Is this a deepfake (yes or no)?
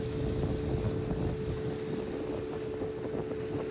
no